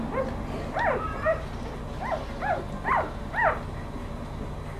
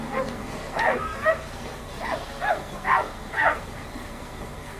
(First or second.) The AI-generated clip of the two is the second